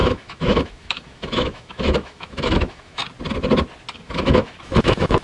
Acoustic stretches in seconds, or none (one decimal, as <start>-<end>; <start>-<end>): 3.0-3.9